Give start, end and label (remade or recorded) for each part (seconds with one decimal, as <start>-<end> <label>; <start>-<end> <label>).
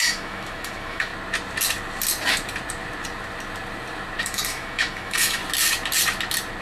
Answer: 0.0-1.1 remade; 1.1-4.2 recorded; 4.2-5.4 remade; 5.4-6.6 recorded